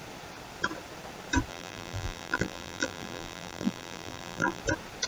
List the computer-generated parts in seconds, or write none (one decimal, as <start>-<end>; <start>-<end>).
1.5-4.6